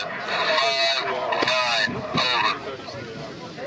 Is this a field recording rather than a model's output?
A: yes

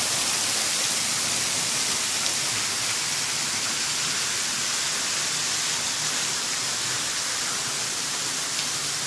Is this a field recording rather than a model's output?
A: yes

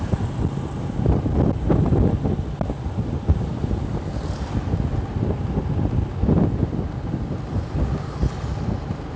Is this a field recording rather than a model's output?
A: yes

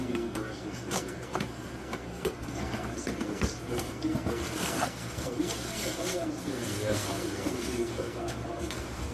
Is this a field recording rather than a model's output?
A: no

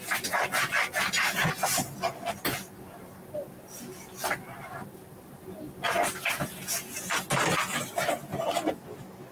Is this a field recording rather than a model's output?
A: yes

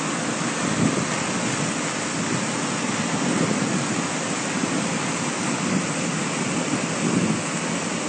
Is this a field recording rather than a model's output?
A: yes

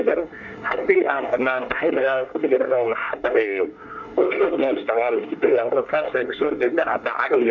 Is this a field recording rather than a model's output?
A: no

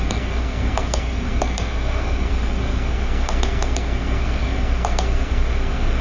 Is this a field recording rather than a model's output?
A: no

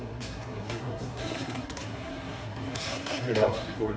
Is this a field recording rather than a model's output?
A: no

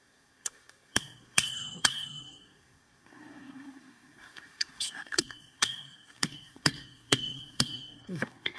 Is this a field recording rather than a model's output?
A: no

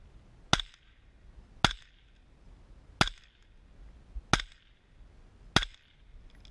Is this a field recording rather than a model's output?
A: yes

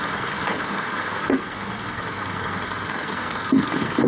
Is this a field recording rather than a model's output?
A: no